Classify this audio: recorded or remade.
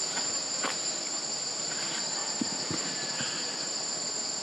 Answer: remade